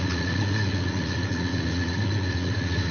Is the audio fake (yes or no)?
yes